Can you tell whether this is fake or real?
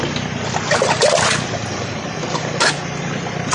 real